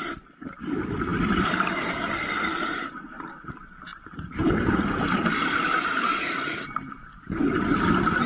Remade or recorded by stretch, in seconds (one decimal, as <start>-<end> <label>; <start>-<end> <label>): 0.0-1.1 recorded; 1.1-3.5 remade; 3.5-3.9 recorded; 3.9-7.5 remade; 7.5-8.3 recorded